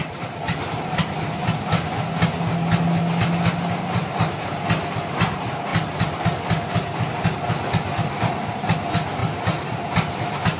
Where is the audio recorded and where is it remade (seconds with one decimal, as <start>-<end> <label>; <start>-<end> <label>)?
0.0-1.0 remade; 1.0-10.6 recorded